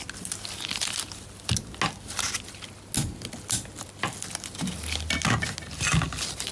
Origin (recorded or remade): recorded